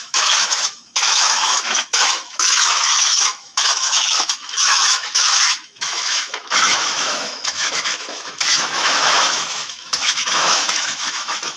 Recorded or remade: remade